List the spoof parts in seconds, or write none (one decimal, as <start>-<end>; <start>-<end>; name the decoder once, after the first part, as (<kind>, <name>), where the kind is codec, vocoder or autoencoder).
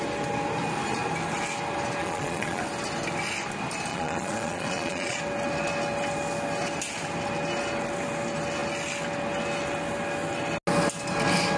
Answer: 2.0-2.6 (vocoder, Vocos); 3.9-5.2